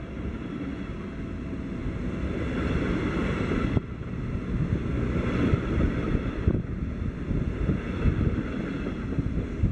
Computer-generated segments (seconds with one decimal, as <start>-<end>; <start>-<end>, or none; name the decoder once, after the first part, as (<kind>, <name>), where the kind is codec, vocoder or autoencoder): none